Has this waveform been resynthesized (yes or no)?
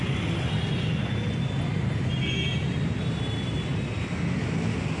no